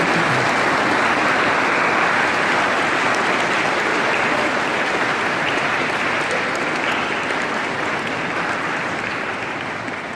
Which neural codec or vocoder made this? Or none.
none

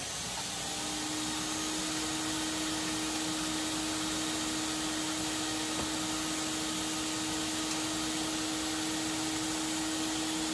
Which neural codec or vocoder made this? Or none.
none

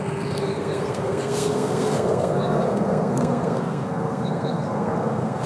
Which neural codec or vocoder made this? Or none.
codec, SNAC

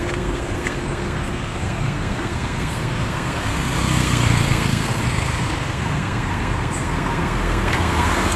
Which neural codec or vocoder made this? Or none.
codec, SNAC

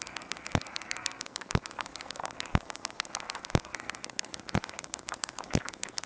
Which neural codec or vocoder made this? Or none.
codec, SNAC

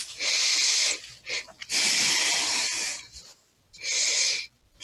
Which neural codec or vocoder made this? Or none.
none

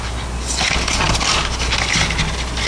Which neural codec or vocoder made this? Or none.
none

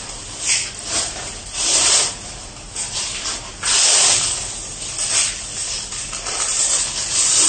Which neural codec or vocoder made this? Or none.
none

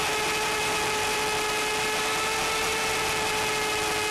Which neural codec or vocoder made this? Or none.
none